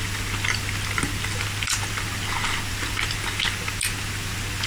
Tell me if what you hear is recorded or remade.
recorded